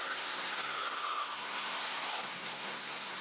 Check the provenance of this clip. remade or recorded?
remade